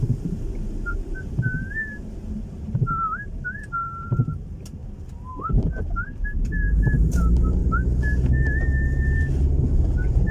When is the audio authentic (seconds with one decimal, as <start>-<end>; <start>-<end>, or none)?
4.8-5.3; 7.6-9.6